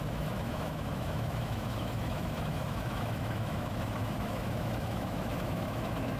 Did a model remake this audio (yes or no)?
yes